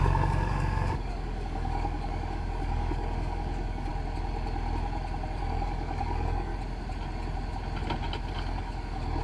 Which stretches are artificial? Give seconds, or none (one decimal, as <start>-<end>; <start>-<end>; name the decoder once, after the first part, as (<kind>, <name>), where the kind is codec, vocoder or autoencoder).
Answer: 0.0-3.9 (codec, DAC); 5.4-6.5; 8.3-9.2